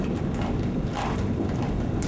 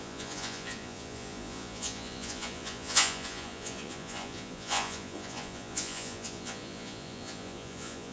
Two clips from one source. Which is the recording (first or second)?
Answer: first